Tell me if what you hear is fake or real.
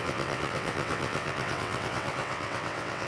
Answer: fake